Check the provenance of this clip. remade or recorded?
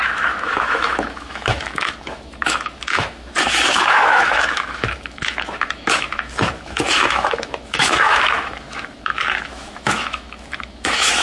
remade